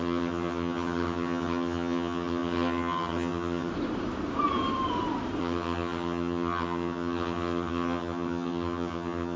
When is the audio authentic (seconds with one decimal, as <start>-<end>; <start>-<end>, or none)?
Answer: 3.7-5.4